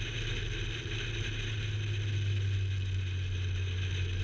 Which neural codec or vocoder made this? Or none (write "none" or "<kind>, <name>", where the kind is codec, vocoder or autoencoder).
none